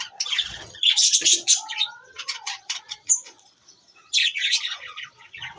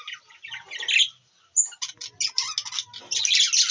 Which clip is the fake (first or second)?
first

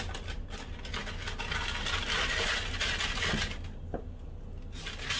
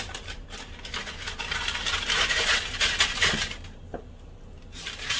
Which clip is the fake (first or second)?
second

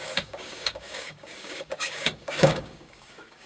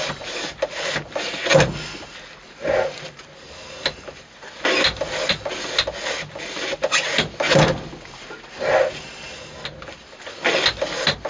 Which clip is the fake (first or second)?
first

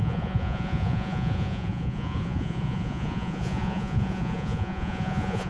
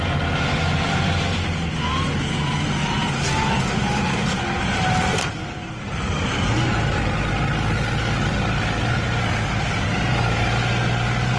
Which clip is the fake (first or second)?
first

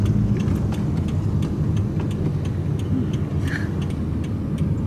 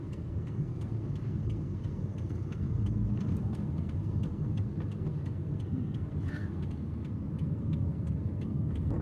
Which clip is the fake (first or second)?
second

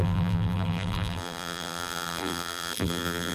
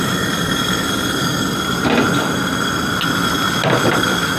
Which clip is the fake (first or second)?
first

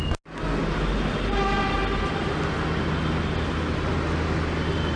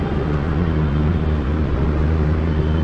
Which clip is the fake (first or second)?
second